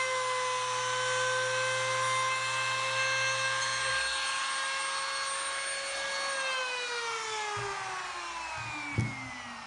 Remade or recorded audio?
recorded